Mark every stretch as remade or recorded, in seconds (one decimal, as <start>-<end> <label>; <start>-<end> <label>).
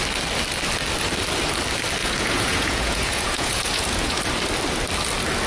0.0-2.0 recorded; 2.0-4.2 remade; 4.2-5.5 recorded